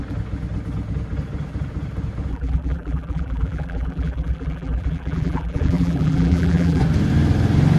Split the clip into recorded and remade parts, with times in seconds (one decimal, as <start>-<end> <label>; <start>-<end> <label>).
0.0-2.3 recorded; 2.3-6.8 remade; 6.8-7.8 recorded